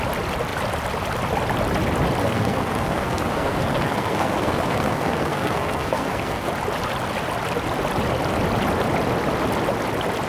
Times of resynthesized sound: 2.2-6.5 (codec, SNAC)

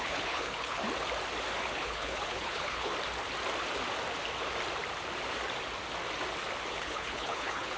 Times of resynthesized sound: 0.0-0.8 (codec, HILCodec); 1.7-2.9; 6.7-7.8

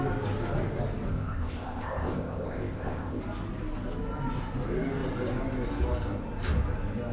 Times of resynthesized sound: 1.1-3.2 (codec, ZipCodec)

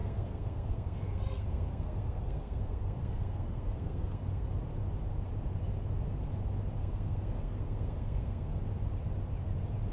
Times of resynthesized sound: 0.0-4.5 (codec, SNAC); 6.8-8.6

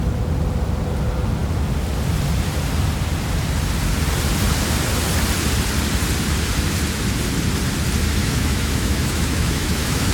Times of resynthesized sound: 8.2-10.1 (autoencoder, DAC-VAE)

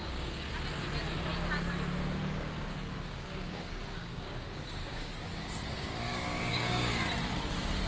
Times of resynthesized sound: 0.0-0.5 (codec, DAC); 2.2-5.3; 5.7-6.9